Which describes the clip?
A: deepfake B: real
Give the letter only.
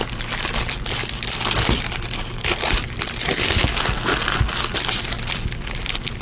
B